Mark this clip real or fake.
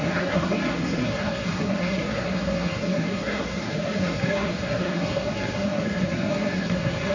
fake